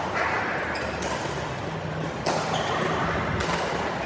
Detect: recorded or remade recorded